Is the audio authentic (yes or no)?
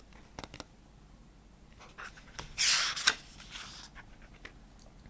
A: yes